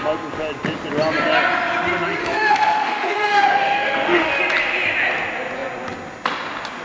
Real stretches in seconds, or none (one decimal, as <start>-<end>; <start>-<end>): 0.0-2.2; 4.4-6.8